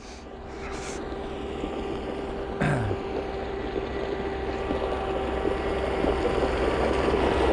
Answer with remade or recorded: recorded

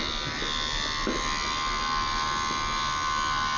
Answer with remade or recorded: recorded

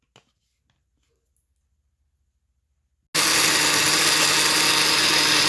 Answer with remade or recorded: recorded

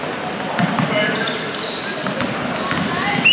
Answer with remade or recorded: recorded